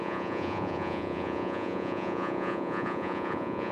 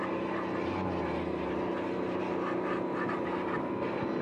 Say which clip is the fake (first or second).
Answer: first